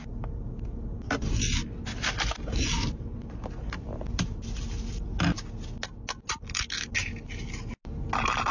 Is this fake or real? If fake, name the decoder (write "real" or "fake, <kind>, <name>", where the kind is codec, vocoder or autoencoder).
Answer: real